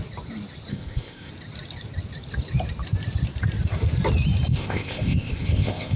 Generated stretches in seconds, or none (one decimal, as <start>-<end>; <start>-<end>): 0.7-1.3; 4.5-6.0